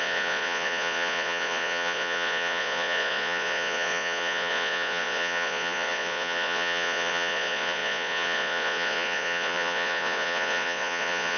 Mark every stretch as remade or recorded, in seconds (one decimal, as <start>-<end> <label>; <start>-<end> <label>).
0.0-11.4 remade